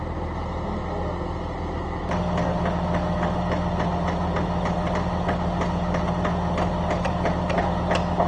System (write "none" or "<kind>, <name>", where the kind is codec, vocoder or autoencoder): none